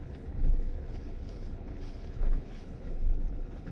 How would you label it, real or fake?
fake